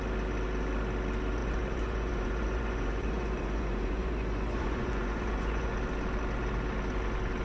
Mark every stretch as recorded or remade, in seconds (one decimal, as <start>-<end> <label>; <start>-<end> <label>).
0.0-1.4 recorded; 1.4-5.7 remade; 5.7-7.4 recorded